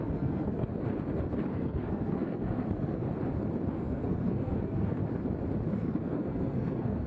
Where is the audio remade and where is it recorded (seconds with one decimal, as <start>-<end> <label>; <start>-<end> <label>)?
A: 0.0-0.7 remade; 0.7-1.5 recorded; 1.5-3.0 remade; 3.0-3.7 recorded; 3.7-5.0 remade; 5.0-5.7 recorded; 5.7-7.1 remade

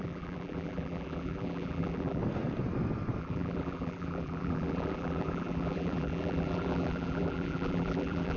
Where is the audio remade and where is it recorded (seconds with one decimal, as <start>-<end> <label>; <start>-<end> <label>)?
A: 0.0-2.2 remade; 2.2-3.2 recorded; 3.2-8.4 remade